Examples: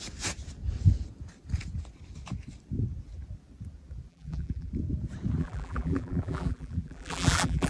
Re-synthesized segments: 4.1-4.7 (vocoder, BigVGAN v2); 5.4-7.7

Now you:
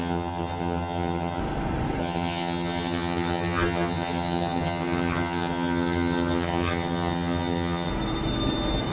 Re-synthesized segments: 0.0-1.4 (vocoder, HiFi-GAN); 2.0-7.9